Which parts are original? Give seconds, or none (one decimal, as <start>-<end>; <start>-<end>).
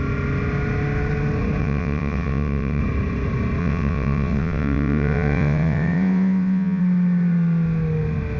0.0-1.6; 2.8-3.6; 6.8-8.4